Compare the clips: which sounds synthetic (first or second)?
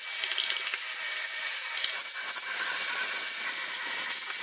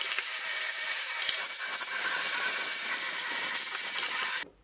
second